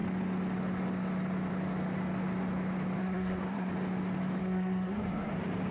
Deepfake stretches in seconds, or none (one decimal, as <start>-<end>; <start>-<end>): 3.0-3.7; 4.4-5.3